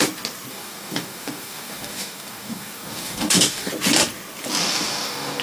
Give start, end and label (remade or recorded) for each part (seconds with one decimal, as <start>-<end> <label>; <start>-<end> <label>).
0.0-0.5 recorded; 0.5-3.7 remade; 3.7-4.6 recorded; 4.6-5.4 remade